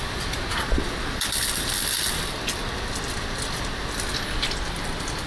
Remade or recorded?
recorded